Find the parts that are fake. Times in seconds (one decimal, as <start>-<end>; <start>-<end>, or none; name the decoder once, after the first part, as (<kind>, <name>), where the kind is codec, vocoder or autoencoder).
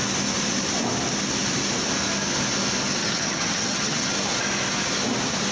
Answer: 3.0-4.1 (vocoder, HiFi-GAN)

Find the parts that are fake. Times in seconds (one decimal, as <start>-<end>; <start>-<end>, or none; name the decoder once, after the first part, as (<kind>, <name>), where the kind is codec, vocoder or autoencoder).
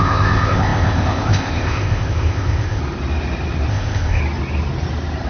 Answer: 0.0-2.8 (codec, ZipCodec); 3.7-4.2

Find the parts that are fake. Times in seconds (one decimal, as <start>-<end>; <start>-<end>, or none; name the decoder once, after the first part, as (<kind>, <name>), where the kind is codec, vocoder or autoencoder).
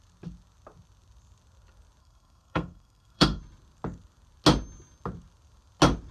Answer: 2.0-3.4 (codec, SNAC)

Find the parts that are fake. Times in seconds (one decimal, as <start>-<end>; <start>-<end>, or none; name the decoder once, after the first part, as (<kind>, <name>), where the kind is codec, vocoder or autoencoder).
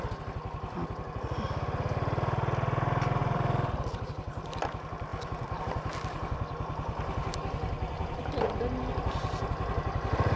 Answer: 3.2-4.1 (vocoder, BigVGAN v2); 5.1-5.6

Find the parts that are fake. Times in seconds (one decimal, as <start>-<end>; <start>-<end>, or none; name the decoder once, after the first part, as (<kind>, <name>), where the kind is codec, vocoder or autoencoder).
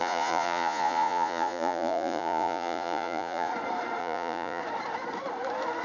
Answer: 0.0-3.5 (vocoder, Vocos); 4.0-4.6